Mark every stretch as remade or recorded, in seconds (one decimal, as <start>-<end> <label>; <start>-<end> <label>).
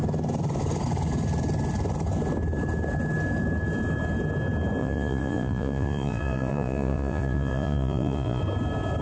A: 0.0-4.8 recorded; 4.8-8.4 remade; 8.4-9.0 recorded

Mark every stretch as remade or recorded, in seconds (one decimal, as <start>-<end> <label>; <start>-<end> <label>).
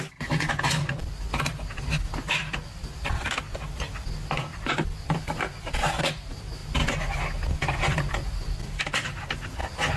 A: 0.0-10.0 recorded